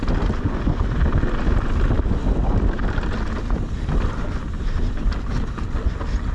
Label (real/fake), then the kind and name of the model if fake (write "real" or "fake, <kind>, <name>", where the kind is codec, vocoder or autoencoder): real